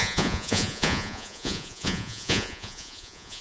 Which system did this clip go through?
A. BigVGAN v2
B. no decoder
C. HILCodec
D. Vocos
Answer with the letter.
D